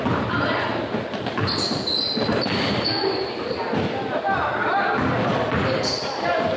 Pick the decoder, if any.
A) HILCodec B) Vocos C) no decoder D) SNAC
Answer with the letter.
C